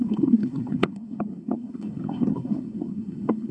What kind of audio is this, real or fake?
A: fake